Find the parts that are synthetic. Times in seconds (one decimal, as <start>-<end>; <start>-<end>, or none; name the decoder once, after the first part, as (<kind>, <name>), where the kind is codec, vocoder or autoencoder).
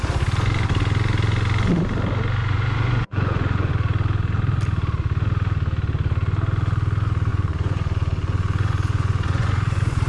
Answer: 2.4-3.7 (vocoder, Vocos); 7.3-10.1